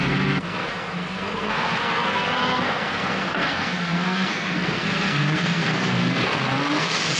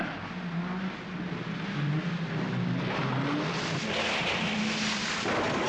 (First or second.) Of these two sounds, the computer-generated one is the first